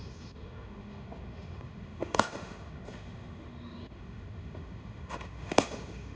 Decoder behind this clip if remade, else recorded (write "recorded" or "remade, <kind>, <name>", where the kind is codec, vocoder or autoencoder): remade, autoencoder, DAC-VAE